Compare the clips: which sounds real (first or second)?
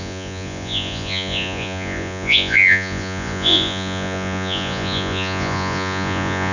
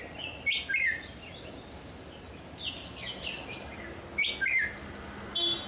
second